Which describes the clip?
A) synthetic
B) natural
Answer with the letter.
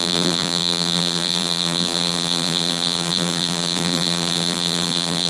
A